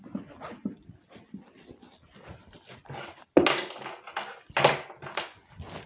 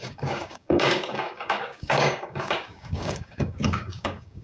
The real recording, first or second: first